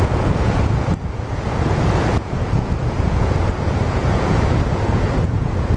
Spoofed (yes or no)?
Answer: yes